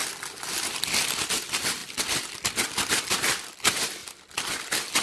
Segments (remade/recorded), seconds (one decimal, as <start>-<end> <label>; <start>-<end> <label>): 0.0-5.0 recorded